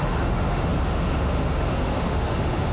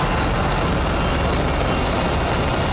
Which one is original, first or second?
second